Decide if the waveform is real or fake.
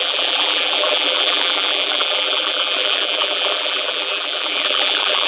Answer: fake